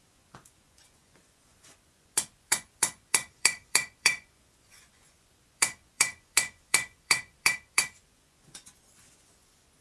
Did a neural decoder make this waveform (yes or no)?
yes